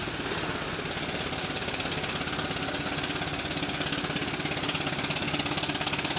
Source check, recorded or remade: recorded